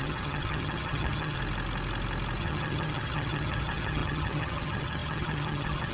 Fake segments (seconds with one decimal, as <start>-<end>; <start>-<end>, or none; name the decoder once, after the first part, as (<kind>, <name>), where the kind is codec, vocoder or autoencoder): 0.0-1.4 (vocoder, HiFi-GAN); 2.4-5.9